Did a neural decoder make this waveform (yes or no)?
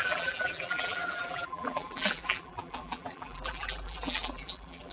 yes